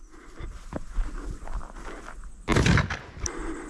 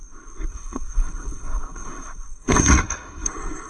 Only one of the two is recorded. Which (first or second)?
first